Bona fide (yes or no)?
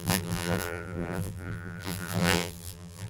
no